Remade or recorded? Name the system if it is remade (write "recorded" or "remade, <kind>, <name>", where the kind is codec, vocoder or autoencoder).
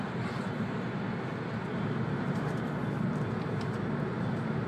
recorded